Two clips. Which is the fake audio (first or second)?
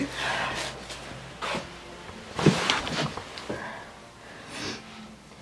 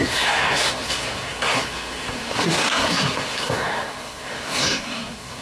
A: second